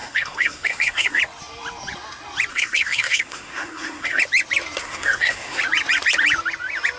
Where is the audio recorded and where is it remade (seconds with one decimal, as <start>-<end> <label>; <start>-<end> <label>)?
0.0-1.2 remade; 1.2-2.5 recorded; 2.5-4.2 remade; 4.2-4.8 recorded; 4.8-5.6 remade; 5.6-7.0 recorded